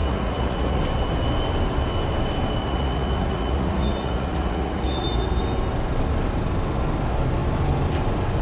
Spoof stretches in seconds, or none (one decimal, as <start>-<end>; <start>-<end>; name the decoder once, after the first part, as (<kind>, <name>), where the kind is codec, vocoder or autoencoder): 0.0-0.8 (vocoder, Vocos); 2.6-5.4